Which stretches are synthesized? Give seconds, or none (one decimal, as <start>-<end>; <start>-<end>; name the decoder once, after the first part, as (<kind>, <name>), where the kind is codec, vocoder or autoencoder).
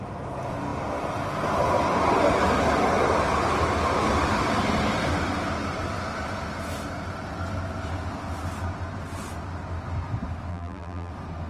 10.5-11.1 (vocoder, BigVGAN v2)